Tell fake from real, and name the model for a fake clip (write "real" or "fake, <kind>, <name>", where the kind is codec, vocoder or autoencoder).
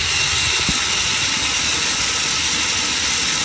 real